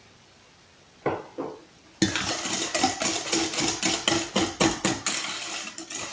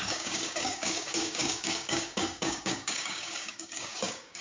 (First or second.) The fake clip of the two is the second